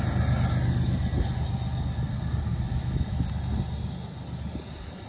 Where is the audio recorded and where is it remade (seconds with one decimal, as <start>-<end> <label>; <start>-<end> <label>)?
0.0-2.5 recorded; 2.5-3.3 remade; 3.3-5.1 recorded